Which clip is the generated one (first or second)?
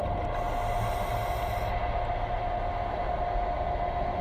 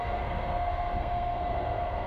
second